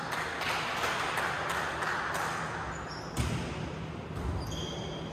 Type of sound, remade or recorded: recorded